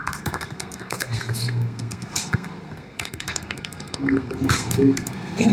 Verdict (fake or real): fake